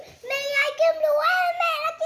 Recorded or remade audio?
recorded